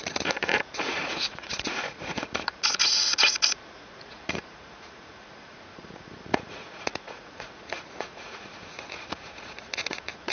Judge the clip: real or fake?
fake